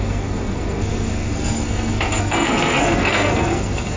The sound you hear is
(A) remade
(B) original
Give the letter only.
A